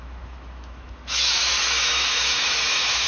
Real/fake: fake